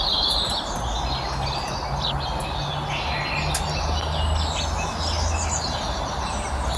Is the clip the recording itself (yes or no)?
yes